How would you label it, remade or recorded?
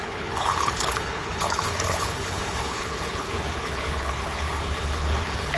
remade